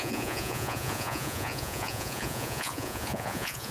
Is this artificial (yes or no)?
yes